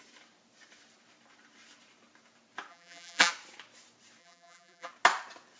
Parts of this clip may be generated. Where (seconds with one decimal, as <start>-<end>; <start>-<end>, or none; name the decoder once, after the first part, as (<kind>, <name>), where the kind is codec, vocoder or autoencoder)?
2.7-3.3 (vocoder, BigVGAN v2); 4.2-4.9